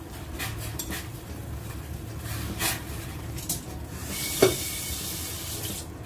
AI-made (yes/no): no